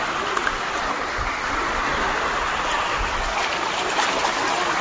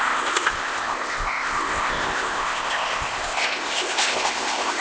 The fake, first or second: second